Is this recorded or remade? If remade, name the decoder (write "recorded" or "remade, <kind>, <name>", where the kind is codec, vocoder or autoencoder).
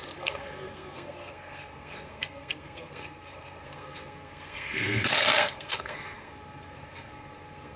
remade, codec, SNAC